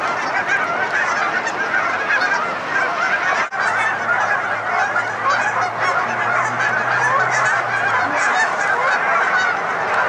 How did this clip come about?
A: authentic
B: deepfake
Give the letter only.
A